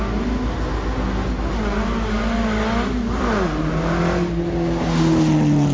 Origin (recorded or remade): recorded